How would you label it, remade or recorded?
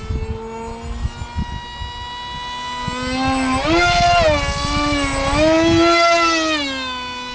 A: recorded